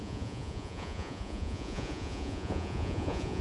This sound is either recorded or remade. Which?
remade